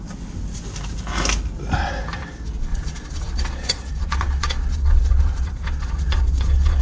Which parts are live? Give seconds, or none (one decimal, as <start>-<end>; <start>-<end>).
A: 0.0-2.7